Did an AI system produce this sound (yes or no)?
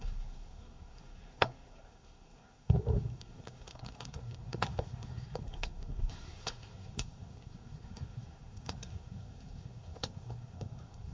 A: yes